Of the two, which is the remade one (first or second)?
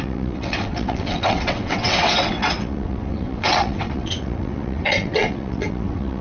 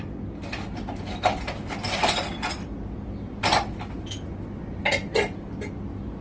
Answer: first